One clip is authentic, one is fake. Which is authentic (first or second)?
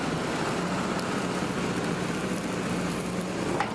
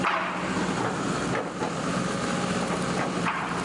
second